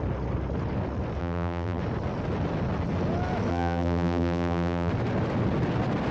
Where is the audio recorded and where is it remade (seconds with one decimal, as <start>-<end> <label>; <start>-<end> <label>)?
0.0-1.2 recorded; 1.2-1.8 remade; 1.8-3.5 recorded; 3.5-4.9 remade; 4.9-6.1 recorded